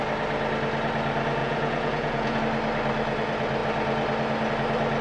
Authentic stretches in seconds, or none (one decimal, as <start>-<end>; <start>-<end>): 0.0-1.4; 2.4-5.0